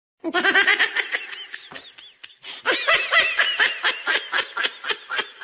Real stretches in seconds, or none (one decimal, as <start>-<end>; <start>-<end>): 0.0-5.4